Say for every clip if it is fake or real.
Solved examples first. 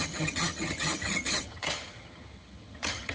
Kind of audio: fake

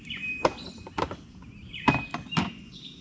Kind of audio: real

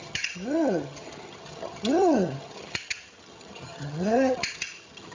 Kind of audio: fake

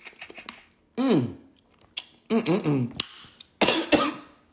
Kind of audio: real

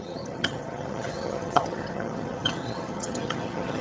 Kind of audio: fake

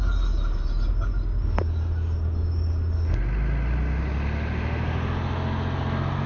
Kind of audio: real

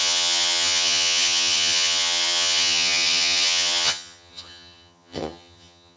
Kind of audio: fake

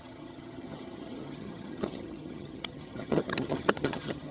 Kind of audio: fake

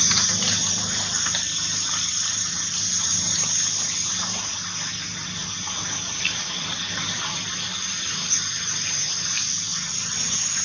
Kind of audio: real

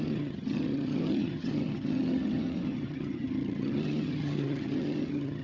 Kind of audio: fake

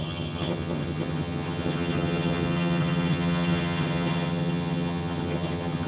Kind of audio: fake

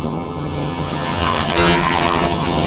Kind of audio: fake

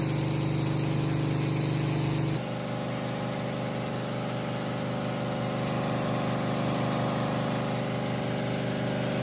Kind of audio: real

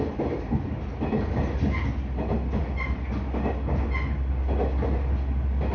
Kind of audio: real